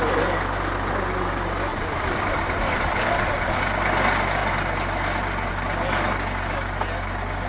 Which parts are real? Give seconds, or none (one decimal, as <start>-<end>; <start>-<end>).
0.0-1.7; 3.6-7.5